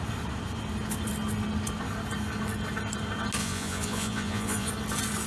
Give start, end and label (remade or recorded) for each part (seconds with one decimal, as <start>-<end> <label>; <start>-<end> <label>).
0.0-3.4 recorded; 3.4-4.7 remade; 4.7-5.3 recorded